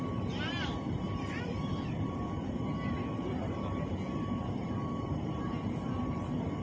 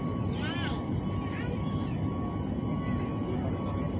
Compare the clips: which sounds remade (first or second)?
first